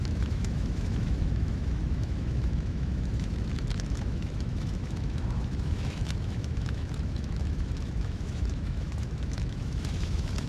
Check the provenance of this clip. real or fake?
fake